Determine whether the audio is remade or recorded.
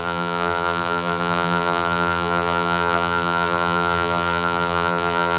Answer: remade